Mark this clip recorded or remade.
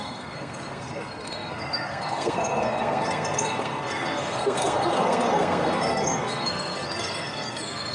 remade